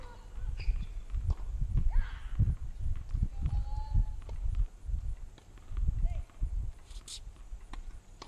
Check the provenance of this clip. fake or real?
real